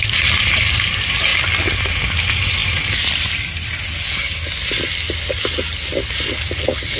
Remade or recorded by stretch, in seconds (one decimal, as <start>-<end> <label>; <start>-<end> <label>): 0.0-7.0 recorded